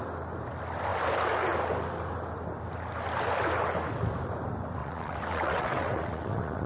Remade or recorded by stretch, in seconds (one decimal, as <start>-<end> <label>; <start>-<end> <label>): 0.0-4.8 recorded; 4.8-6.7 remade